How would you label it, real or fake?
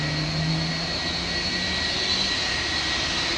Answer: real